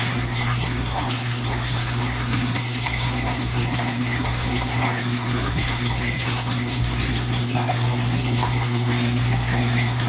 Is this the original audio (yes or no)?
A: no